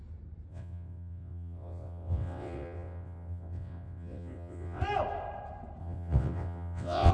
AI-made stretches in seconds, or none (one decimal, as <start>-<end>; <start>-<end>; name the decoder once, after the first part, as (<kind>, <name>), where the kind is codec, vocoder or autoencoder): 0.5-4.8 (vocoder, WaveNeXt); 5.8-7.1